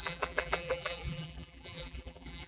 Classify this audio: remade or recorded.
remade